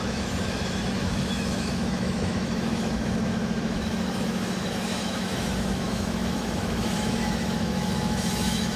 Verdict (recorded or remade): remade